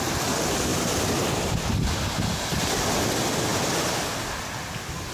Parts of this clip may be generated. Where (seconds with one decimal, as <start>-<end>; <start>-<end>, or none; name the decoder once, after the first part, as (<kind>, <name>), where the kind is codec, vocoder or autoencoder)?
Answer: 0.7-1.3 (vocoder, BigVGAN v2)